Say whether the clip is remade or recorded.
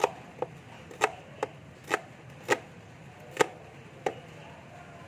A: recorded